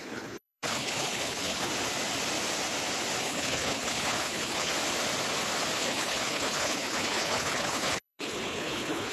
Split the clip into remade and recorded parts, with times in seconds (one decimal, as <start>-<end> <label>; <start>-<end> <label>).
0.0-1.7 remade; 1.7-3.2 recorded; 3.2-4.7 remade; 4.7-5.8 recorded; 5.8-9.1 remade